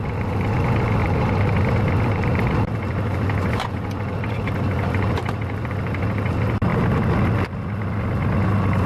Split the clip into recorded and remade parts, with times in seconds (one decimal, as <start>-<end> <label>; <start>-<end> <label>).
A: 0.0-1.0 recorded; 1.0-5.7 remade; 5.7-8.9 recorded